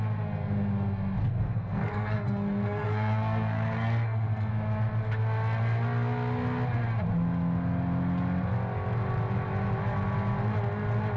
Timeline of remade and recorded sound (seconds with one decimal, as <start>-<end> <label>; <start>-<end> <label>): 0.0-1.2 recorded; 1.2-4.5 remade; 4.5-11.2 recorded